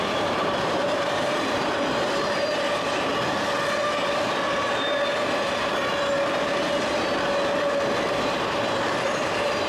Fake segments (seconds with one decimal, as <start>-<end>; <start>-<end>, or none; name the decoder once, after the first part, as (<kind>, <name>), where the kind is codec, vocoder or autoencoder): 0.0-3.1 (vocoder, BigVGAN v2); 4.5-4.9; 8.2-9.7